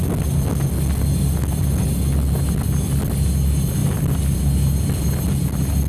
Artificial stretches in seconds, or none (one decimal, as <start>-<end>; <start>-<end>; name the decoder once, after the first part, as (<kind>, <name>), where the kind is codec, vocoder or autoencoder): 3.8-4.4 (vocoder, BigVGAN v2)